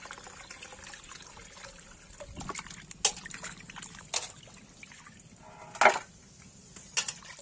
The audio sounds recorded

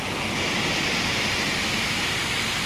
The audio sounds recorded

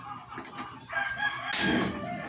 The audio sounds recorded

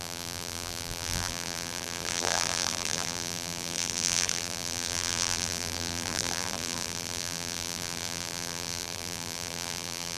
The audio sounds remade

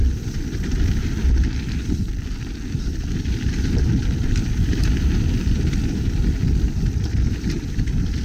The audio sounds remade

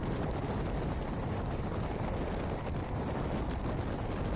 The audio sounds recorded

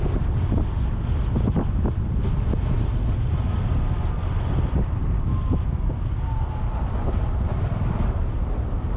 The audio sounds recorded